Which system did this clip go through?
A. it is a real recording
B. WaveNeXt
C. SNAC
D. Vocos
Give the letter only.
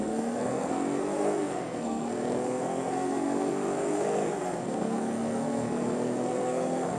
C